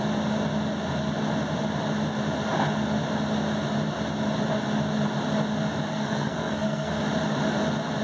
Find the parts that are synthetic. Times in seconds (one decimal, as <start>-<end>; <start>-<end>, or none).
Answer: 5.9-7.0